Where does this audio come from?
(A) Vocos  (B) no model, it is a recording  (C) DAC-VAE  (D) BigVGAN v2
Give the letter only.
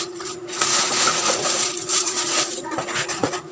A